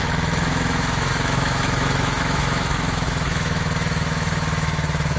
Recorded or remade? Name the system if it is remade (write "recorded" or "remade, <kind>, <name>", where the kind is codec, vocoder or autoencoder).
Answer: remade, autoencoder, DAC-VAE